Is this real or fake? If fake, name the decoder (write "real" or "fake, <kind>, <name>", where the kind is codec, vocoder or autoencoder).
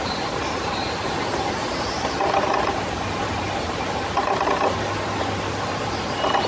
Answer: real